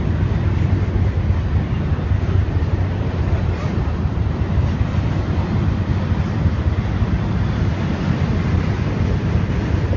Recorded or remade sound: recorded